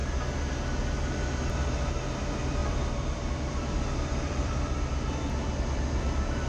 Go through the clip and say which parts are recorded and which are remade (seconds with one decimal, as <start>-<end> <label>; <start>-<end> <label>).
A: 0.0-2.6 recorded; 2.6-4.5 remade; 4.5-6.5 recorded